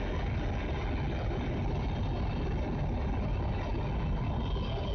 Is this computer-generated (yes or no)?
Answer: no